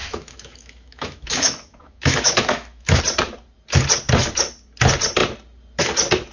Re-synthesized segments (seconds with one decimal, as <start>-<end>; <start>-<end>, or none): 0.0-3.0